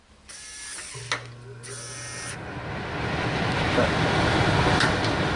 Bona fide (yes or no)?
yes